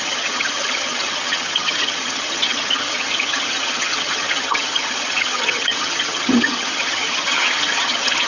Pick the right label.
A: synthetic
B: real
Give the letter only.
A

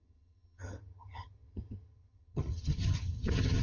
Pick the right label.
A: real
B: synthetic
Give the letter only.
B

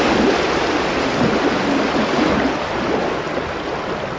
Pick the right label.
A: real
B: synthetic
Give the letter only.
A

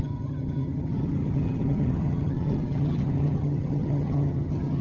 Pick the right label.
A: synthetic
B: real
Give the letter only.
A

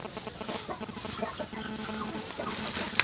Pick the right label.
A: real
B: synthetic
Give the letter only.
A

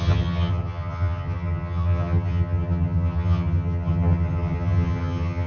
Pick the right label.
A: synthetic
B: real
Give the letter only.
A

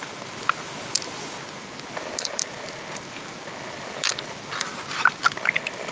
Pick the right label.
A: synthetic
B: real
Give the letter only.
B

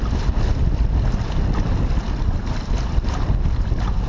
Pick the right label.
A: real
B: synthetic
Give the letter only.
A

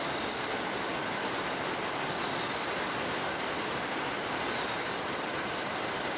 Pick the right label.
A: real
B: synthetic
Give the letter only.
A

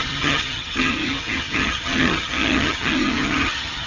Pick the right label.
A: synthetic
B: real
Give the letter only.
A